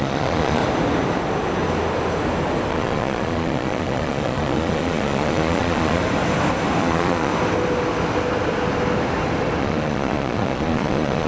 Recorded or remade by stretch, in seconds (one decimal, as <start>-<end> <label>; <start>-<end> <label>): 0.0-0.6 remade; 0.6-2.7 recorded; 2.7-6.0 remade; 6.0-6.8 recorded; 6.8-7.3 remade; 7.3-9.6 recorded; 9.6-11.3 remade